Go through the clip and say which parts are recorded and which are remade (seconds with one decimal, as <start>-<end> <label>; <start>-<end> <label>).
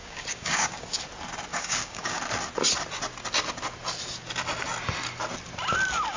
0.0-1.0 remade; 1.0-1.5 recorded; 1.5-2.2 remade; 2.2-6.2 recorded